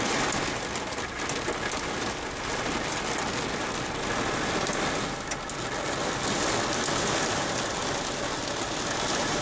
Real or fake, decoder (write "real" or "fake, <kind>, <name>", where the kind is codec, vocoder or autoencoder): real